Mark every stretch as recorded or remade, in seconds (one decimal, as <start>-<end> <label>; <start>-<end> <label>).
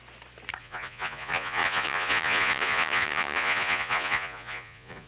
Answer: 0.0-0.6 recorded; 0.6-5.1 remade